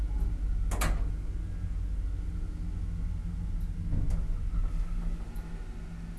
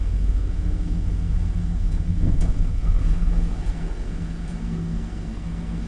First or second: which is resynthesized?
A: second